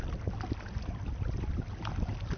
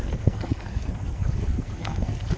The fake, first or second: second